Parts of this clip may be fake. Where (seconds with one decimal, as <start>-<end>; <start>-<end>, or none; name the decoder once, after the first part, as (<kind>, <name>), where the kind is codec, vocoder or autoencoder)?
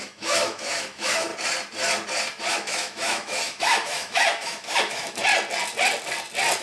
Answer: 0.0-1.3 (autoencoder, DAC-VAE); 2.5-5.2